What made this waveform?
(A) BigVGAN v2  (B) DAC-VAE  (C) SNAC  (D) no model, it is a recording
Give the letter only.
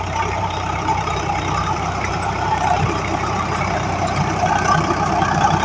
A